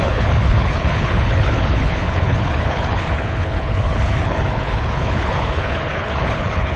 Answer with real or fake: fake